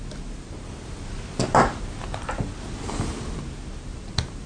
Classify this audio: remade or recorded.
recorded